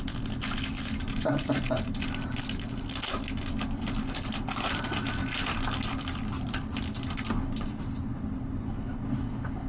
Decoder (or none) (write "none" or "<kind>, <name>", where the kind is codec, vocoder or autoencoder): none